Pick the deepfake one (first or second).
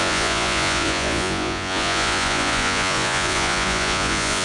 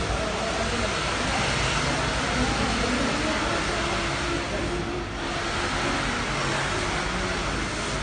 first